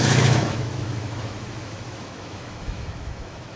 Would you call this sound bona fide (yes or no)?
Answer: no